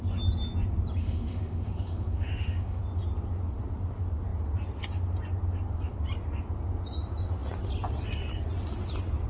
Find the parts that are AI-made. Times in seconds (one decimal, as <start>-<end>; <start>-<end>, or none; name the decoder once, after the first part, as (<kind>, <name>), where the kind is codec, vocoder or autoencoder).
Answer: 1.0-2.8 (autoencoder, DAC-VAE)